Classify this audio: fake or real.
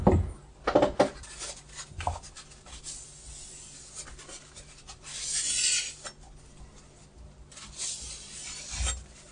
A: real